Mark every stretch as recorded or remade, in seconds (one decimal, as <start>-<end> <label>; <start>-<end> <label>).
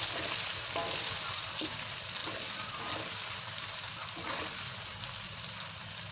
0.0-6.1 recorded